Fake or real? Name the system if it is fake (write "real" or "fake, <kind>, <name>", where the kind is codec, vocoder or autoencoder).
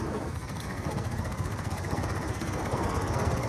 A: fake, codec, SNAC